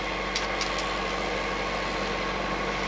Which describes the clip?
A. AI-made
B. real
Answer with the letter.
B